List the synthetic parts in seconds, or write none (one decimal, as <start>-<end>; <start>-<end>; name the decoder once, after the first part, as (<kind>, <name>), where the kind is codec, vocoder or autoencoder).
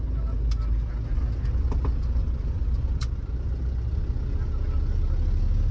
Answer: 2.2-4.0 (vocoder, BigVGAN v2)